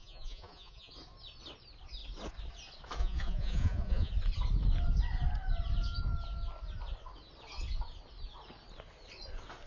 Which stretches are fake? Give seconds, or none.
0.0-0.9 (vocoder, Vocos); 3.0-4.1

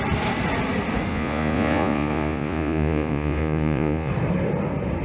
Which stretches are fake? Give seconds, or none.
1.1-4.1 (vocoder, Vocos)

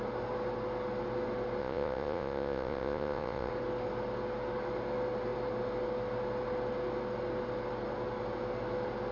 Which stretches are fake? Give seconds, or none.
1.6-3.5 (vocoder, Vocos)

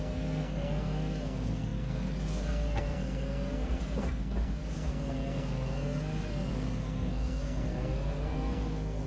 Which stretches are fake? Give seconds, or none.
0.0-9.1 (codec, SNAC)

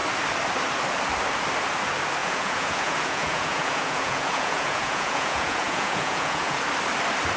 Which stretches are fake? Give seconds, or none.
2.2-6.6 (vocoder, Vocos)

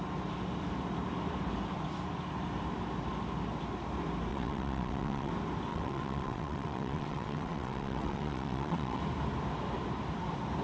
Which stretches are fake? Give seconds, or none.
4.3-5.3 (vocoder, WaveNeXt); 5.7-9.0

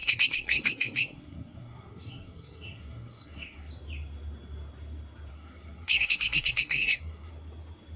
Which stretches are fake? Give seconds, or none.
0.0-3.7 (codec, SNAC); 5.3-7.3